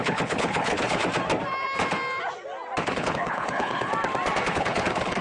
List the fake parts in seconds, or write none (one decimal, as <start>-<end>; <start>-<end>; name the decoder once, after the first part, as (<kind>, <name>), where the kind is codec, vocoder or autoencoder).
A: 0.0-1.0 (codec, HILCodec); 2.9-3.9; 4.5-5.2